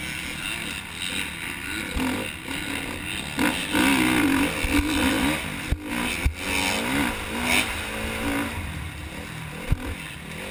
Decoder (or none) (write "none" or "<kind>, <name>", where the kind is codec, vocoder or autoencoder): none